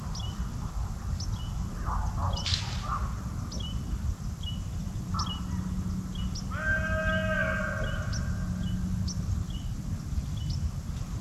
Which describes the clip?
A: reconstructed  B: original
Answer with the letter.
B